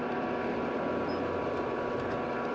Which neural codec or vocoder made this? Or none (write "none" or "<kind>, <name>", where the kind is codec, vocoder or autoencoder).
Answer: none